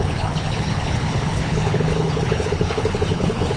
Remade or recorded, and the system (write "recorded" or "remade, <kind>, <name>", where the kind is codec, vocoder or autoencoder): remade, codec, HILCodec